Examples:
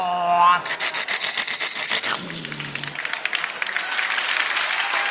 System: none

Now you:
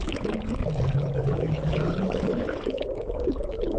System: codec, DAC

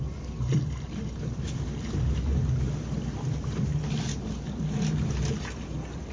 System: none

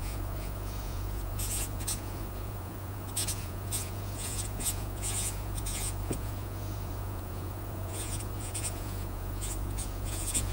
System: vocoder, Vocos